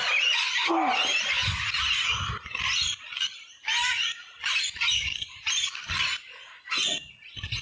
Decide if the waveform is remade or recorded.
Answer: recorded